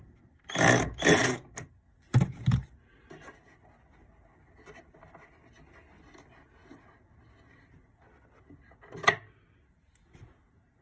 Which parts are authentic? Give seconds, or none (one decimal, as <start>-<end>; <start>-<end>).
0.0-10.8